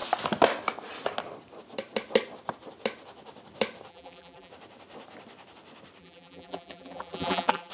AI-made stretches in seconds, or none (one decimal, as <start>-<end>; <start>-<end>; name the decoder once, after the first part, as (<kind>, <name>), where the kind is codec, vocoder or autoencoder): 3.9-4.5 (vocoder, BigVGAN v2); 6.0-7.7